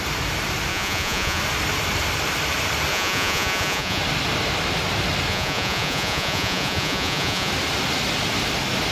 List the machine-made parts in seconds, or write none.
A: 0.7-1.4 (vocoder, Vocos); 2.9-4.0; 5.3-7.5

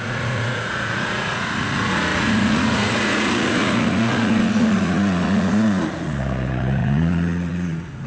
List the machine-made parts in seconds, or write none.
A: 0.0-8.1 (vocoder, Vocos)

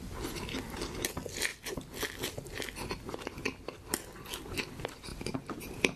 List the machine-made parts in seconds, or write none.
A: none

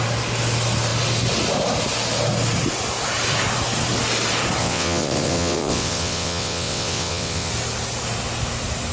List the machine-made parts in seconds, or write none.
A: 4.6-7.5 (vocoder, WaveNeXt)

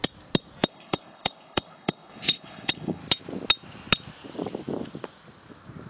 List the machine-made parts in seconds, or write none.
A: 0.7-3.0 (codec, HILCodec)

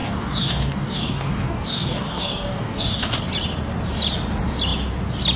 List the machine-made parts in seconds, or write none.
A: 0.0-3.2 (codec, DAC)